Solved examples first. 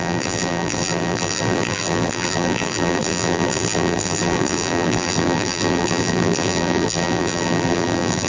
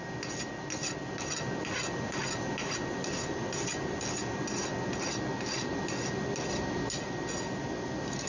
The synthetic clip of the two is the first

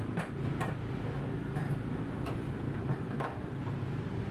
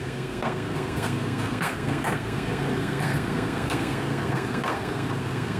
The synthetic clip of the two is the second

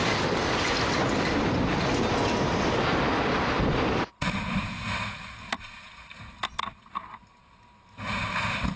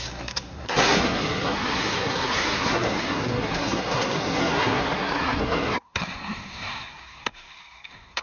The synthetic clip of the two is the second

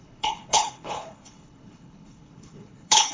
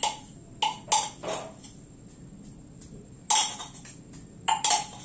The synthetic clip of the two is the first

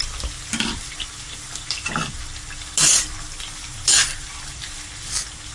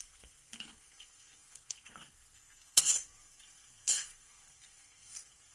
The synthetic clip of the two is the second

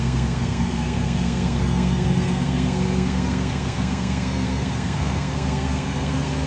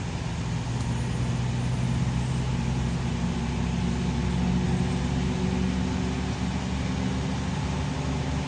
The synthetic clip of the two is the first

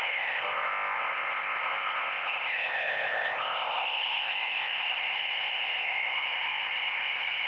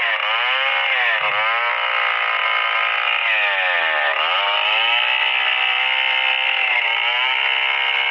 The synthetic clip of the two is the first